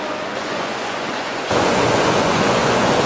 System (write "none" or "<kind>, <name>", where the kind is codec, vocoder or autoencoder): vocoder, Vocos